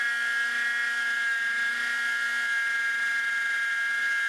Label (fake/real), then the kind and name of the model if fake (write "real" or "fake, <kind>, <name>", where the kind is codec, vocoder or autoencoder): real